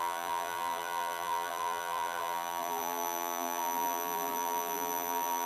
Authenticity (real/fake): fake